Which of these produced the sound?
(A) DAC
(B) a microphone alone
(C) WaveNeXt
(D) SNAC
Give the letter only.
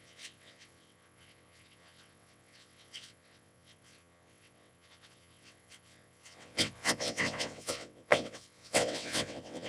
C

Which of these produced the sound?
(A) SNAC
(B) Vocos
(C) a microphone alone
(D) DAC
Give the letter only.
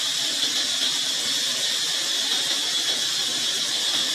C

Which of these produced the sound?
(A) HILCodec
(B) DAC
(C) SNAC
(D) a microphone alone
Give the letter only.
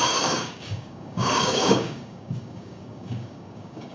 B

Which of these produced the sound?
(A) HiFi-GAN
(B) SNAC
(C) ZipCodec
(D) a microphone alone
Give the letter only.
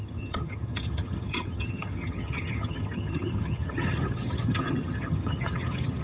A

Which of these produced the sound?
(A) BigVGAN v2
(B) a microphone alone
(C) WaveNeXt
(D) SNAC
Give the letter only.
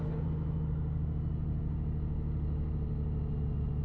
B